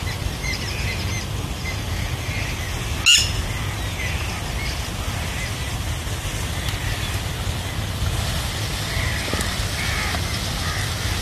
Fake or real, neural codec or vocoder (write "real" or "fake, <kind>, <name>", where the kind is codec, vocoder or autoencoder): real